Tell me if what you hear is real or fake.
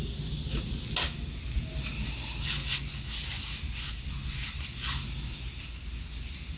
real